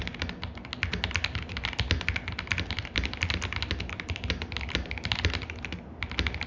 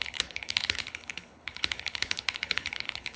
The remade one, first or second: second